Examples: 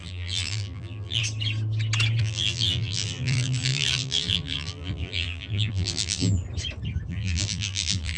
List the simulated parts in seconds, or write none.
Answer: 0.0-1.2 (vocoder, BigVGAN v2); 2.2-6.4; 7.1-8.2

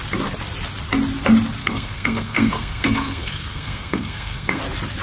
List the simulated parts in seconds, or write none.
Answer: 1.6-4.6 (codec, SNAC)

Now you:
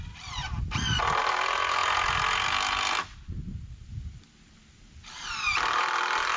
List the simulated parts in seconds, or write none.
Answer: 0.0-0.4 (vocoder, BigVGAN v2); 1.2-1.8; 3.7-6.4